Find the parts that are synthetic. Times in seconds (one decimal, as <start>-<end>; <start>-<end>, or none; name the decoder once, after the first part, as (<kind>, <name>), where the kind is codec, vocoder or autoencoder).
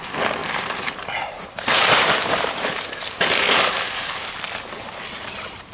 0.4-3.8 (vocoder, BigVGAN v2)